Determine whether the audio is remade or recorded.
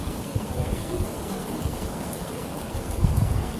remade